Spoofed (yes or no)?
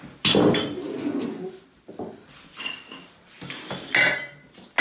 no